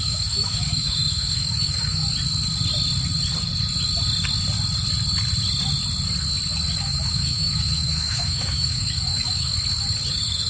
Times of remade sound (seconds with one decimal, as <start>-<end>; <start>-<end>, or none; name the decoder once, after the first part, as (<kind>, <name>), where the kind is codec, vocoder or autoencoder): 0.0-2.0 (autoencoder, DAC-VAE); 6.8-9.5; 10.1-10.5